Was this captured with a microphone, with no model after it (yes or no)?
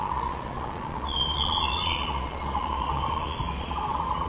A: no